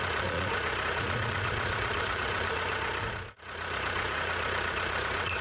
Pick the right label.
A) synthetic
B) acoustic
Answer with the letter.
A